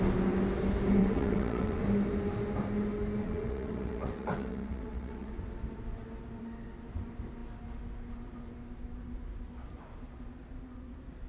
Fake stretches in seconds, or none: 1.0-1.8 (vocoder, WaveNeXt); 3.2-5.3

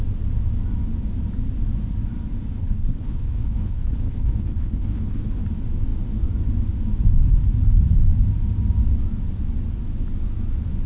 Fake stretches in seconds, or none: 2.6-5.4 (codec, HILCodec)